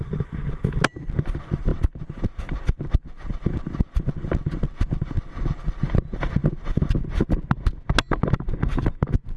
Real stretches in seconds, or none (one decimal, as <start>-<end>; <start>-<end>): 0.0-9.4